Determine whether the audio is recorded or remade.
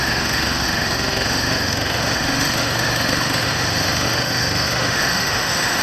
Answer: remade